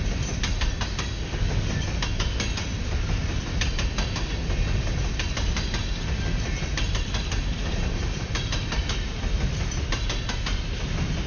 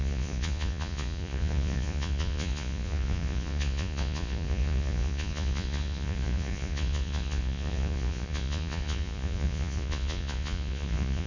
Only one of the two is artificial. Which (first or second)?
second